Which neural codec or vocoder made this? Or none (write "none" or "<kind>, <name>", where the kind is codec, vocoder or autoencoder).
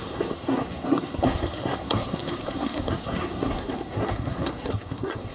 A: codec, SNAC